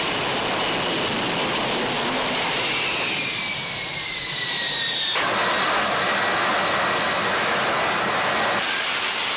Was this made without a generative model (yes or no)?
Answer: yes